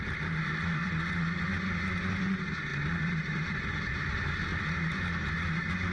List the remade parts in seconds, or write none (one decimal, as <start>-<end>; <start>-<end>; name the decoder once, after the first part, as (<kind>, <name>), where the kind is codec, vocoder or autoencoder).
0.0-0.8 (vocoder, BigVGAN v2); 2.1-5.9